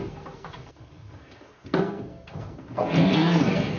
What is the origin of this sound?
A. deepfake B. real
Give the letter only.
A